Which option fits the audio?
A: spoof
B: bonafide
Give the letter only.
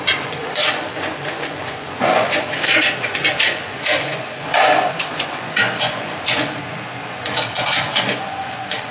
A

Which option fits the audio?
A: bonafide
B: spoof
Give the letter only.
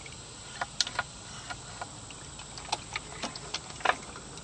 A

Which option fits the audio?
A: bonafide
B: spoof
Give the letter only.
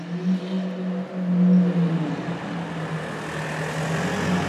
A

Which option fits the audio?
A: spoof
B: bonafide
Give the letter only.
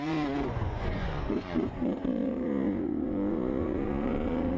A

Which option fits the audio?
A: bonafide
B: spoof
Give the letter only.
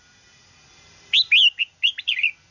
A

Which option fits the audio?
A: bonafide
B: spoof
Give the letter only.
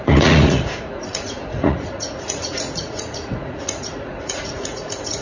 B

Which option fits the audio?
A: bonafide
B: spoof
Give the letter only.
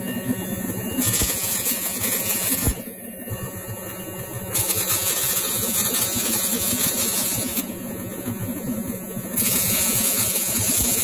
B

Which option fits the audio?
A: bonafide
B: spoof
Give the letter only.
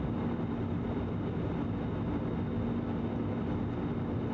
A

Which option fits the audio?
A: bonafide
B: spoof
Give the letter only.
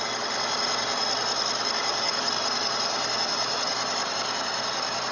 A